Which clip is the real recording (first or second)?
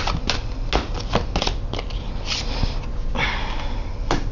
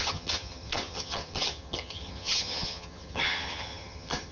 first